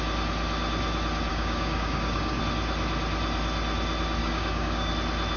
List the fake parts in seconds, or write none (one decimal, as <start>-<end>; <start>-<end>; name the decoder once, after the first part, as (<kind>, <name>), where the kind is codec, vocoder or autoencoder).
1.3-2.4 (codec, DAC); 4.2-4.9